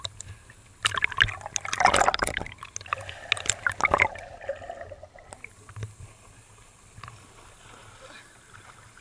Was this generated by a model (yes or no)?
no